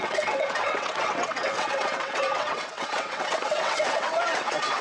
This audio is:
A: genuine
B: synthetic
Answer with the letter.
B